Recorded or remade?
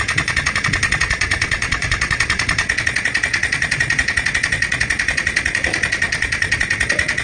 remade